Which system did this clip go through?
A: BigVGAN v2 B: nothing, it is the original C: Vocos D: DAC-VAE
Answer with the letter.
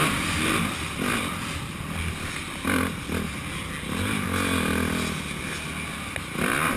B